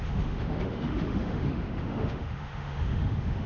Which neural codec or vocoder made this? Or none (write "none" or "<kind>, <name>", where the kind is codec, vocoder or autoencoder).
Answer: autoencoder, DAC-VAE